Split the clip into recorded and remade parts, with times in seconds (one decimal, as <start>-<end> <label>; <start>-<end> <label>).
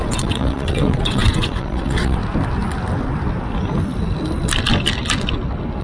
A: 0.0-2.2 remade; 2.2-5.8 recorded